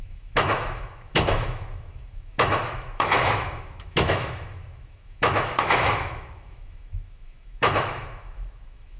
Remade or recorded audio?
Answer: remade